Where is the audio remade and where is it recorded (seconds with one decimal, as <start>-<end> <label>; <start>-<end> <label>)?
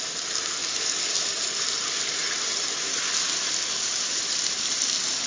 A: 0.0-0.6 remade; 0.6-1.1 recorded; 1.1-5.3 remade